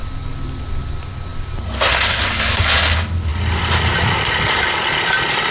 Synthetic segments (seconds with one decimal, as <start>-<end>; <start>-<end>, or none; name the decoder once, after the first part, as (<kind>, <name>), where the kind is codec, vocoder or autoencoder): none